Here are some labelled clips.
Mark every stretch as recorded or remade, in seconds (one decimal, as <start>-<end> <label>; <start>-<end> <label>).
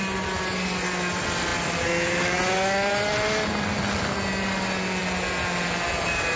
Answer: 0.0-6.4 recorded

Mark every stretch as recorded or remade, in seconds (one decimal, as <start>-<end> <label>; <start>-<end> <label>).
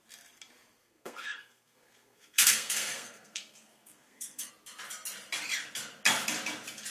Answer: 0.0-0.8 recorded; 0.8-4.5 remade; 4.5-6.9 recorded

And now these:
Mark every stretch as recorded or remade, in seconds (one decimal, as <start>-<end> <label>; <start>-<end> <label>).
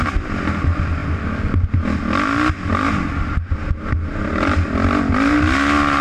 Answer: 0.0-6.0 recorded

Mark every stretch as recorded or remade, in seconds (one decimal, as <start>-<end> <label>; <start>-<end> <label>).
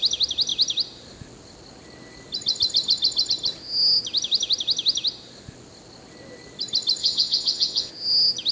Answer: 0.0-7.0 recorded; 7.0-7.9 remade; 7.9-8.5 recorded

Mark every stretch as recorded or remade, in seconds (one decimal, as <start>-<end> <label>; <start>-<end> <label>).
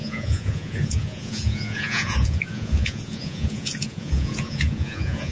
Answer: 0.0-5.3 remade